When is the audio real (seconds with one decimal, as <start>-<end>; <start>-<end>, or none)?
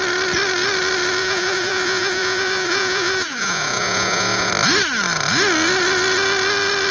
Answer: 0.0-1.2; 4.5-6.9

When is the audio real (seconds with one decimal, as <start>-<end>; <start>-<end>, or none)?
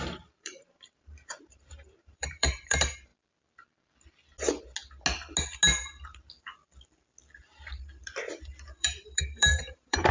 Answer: 3.1-8.3